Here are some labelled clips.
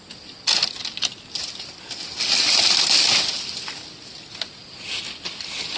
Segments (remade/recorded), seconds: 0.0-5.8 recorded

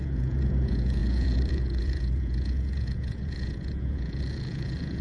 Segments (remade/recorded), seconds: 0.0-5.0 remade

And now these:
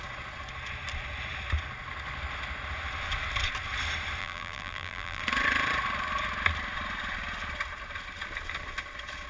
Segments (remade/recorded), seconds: 0.0-4.2 recorded; 4.2-5.2 remade; 5.2-9.3 recorded